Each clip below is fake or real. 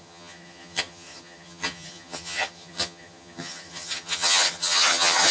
fake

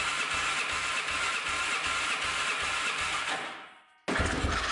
real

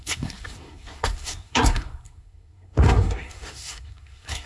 fake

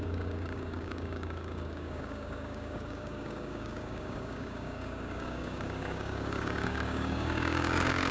fake